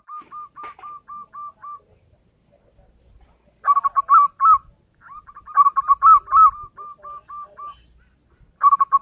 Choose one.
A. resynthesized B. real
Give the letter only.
B